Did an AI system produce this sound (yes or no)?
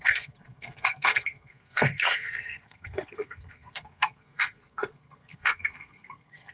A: yes